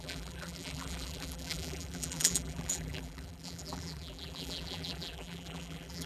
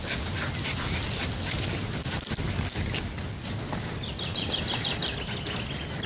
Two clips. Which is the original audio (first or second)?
second